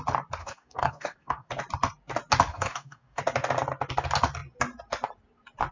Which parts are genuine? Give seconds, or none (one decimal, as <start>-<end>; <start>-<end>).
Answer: 0.0-0.4; 1.5-2.5; 3.2-5.7